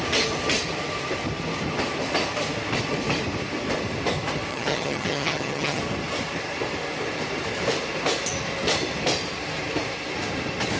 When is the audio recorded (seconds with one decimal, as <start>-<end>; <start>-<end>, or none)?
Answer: 0.0-4.5; 5.8-10.8